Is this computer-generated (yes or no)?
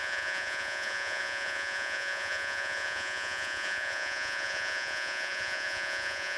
yes